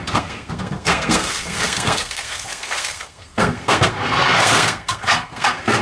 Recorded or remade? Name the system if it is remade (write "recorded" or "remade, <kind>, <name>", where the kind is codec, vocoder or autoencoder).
remade, codec, SNAC